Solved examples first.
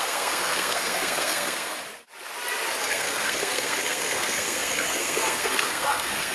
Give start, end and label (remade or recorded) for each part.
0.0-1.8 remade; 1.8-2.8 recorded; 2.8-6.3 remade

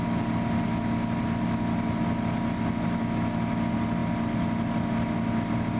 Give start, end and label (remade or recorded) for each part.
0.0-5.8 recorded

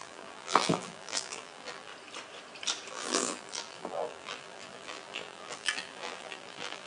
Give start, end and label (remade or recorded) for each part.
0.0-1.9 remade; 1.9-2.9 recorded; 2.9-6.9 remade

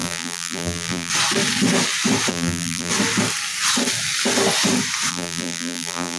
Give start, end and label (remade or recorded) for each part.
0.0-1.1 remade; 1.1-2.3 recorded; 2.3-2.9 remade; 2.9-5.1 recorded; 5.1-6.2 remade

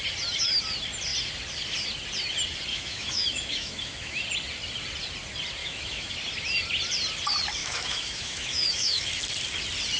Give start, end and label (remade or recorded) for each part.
0.0-2.7 recorded; 2.7-4.2 remade; 4.2-5.6 recorded; 5.6-6.1 remade; 6.1-7.6 recorded; 7.6-9.2 remade; 9.2-10.0 recorded

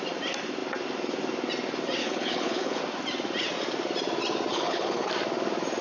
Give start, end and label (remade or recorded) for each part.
0.0-2.0 recorded; 2.0-2.8 remade; 2.8-4.5 recorded; 4.5-5.1 remade; 5.1-5.8 recorded

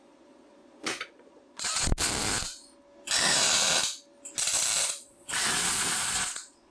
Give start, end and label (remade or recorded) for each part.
0.0-1.9 remade; 1.9-4.8 recorded; 4.8-6.7 remade